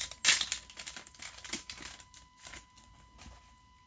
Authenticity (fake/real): real